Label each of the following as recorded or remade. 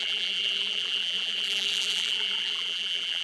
remade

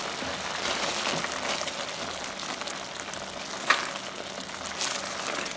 recorded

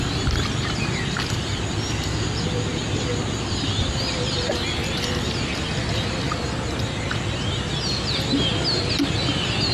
recorded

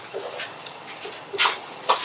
recorded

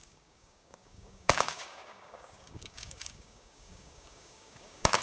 remade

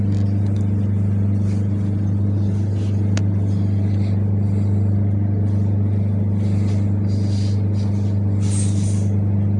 recorded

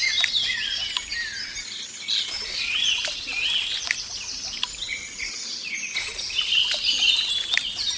recorded